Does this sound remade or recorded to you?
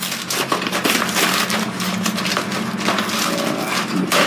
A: recorded